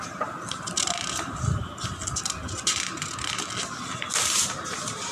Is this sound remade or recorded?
recorded